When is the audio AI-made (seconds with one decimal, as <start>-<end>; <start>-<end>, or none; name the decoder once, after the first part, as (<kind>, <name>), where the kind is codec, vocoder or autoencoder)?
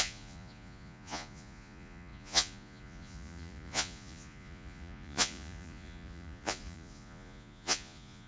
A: 0.0-8.3 (vocoder, Vocos)